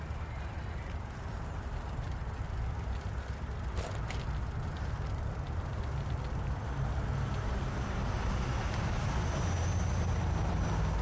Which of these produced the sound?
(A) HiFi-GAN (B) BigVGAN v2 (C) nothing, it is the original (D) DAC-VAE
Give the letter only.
B